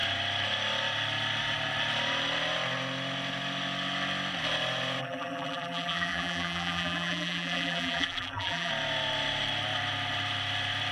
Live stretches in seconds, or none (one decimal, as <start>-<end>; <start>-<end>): 0.0-5.0; 8.7-10.9